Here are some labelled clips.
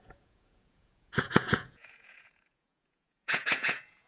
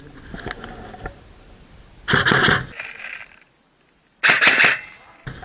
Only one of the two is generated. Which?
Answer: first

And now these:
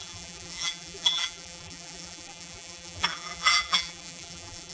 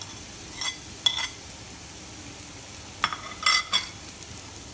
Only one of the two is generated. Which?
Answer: first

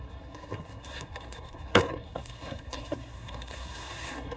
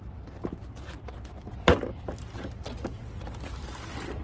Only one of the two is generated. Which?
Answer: first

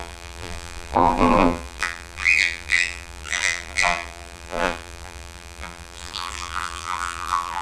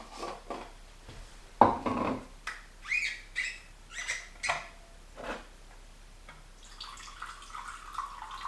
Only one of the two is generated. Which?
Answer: first